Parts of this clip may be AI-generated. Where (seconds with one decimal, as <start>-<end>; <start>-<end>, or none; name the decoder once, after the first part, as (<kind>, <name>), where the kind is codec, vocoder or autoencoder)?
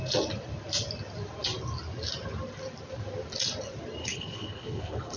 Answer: 4.0-5.2 (codec, HILCodec)